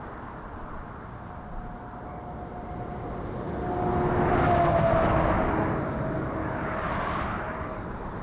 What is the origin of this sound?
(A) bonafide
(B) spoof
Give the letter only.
A